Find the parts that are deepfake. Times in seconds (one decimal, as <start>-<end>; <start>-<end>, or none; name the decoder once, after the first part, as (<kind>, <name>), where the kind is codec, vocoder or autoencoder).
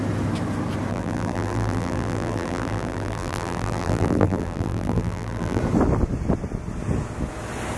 0.9-5.6 (vocoder, BigVGAN v2)